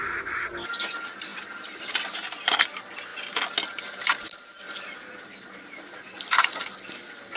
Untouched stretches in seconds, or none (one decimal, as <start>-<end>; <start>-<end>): 1.3-2.0; 3.1-3.8